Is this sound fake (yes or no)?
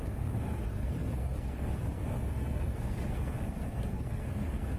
yes